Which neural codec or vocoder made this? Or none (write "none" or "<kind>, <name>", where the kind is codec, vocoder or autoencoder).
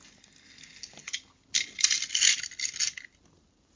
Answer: none